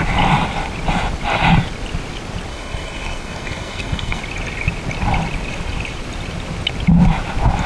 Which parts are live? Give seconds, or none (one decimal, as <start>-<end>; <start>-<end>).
0.0-2.5; 4.2-7.7